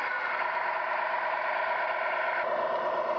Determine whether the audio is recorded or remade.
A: recorded